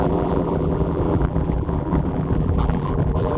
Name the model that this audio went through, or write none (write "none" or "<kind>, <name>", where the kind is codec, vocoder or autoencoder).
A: vocoder, BigVGAN v2